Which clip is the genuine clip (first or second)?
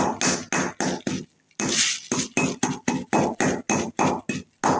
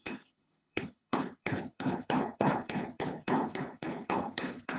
first